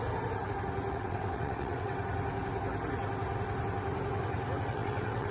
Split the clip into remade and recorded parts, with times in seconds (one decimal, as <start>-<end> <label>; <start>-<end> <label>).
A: 0.0-0.9 recorded; 0.9-1.9 remade; 1.9-4.6 recorded; 4.6-5.3 remade